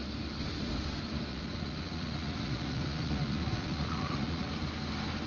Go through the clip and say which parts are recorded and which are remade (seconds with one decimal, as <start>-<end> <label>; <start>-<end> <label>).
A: 0.0-1.3 recorded; 1.3-4.5 remade; 4.5-5.3 recorded